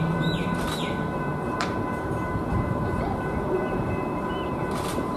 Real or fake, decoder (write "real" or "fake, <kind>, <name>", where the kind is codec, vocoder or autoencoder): fake, vocoder, BigVGAN v2